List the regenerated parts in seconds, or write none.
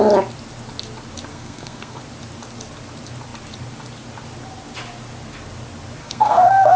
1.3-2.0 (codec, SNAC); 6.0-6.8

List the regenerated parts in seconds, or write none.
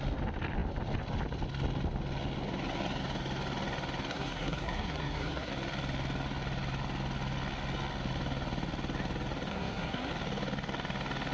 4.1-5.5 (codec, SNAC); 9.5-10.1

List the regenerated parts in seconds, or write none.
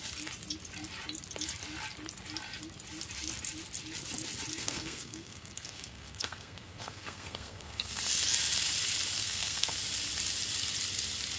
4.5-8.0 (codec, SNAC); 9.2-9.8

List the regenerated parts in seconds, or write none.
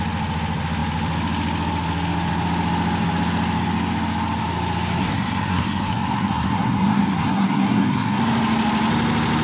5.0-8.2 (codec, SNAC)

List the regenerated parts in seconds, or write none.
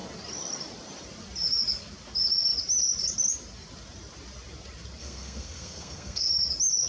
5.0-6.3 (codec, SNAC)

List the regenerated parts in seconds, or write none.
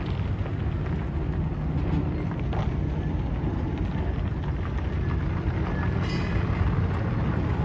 none